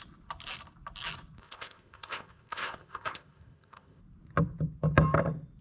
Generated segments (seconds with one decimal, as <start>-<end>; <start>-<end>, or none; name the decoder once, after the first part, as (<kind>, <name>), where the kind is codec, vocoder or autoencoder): 1.4-4.0 (codec, ZipCodec)